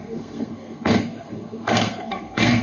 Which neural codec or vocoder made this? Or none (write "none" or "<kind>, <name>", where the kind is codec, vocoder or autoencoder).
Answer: codec, SNAC